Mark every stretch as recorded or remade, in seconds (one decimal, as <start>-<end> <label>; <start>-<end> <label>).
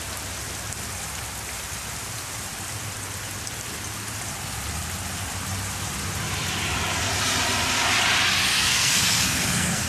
0.0-8.5 recorded; 8.5-9.9 remade